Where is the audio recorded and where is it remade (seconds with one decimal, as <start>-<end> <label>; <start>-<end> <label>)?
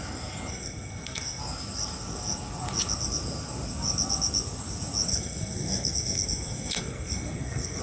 0.0-0.5 recorded; 0.5-1.4 remade; 1.4-5.1 recorded; 5.1-7.8 remade